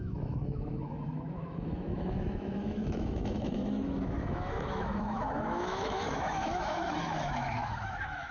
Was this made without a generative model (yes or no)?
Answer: no